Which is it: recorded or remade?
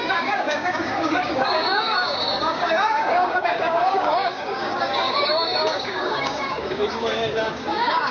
remade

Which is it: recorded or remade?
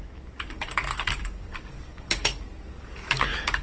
remade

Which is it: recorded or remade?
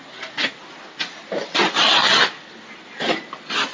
recorded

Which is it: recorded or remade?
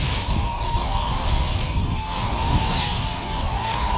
remade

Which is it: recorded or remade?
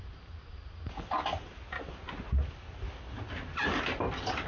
recorded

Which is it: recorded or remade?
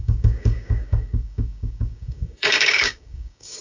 remade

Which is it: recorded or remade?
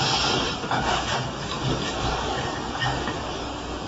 remade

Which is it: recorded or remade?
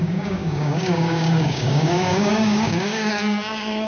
remade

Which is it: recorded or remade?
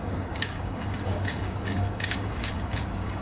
remade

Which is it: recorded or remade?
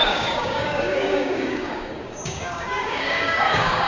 remade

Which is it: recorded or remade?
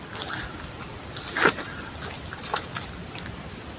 recorded